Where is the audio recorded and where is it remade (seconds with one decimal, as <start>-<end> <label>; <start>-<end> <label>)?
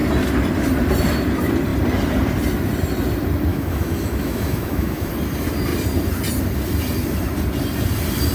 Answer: 0.0-3.5 recorded; 3.5-5.1 remade; 5.1-8.3 recorded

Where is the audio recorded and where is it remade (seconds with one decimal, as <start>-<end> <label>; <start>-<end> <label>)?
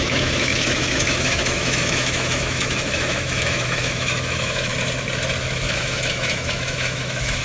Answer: 0.0-4.7 remade; 4.7-5.4 recorded; 5.4-7.4 remade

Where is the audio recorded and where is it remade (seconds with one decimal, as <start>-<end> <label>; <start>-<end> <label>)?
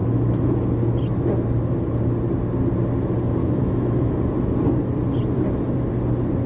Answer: 0.0-0.5 remade; 0.5-3.4 recorded; 3.4-4.1 remade; 4.1-6.5 recorded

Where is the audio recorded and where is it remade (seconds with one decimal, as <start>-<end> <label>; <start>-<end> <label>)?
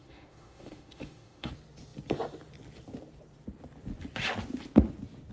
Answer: 0.0-1.5 remade; 1.5-5.3 recorded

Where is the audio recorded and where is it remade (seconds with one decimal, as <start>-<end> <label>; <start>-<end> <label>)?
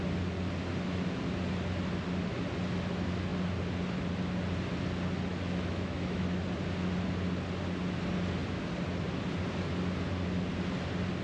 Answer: 0.0-5.3 recorded; 5.3-6.2 remade; 6.2-11.2 recorded